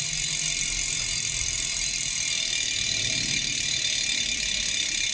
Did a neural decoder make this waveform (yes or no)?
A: no